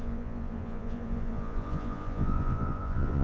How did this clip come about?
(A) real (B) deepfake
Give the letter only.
B